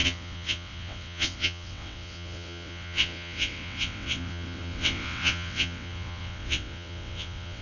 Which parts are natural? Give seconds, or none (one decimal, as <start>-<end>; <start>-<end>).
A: none